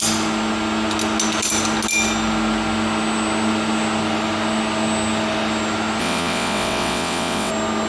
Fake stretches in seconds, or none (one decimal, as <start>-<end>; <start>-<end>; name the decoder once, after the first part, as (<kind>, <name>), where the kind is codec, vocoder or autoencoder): 6.0-7.5 (vocoder, WaveNeXt)